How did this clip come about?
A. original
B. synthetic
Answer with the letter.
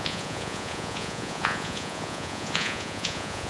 B